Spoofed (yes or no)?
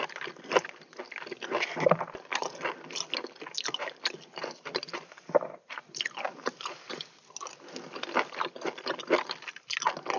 no